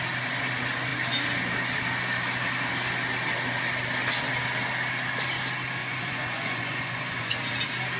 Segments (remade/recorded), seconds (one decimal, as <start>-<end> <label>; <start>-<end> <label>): 0.0-5.8 recorded; 5.8-7.5 remade; 7.5-8.0 recorded